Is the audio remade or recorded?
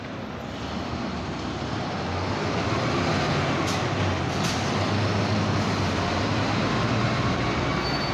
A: recorded